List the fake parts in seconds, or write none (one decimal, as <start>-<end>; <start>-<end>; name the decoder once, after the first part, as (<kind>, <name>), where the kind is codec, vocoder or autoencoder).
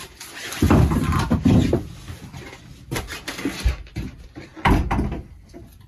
none